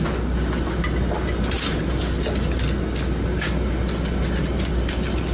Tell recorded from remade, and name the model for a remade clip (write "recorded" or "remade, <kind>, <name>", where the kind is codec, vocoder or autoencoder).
recorded